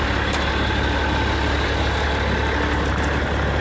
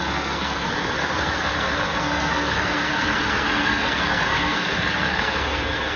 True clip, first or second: first